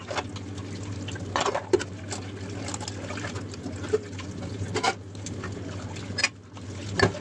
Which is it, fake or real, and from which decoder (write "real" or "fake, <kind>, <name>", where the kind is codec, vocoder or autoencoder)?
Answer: real